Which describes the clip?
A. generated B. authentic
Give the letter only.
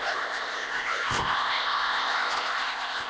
A